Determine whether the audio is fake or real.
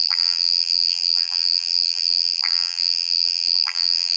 fake